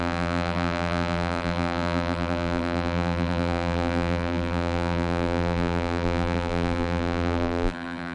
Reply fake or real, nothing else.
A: fake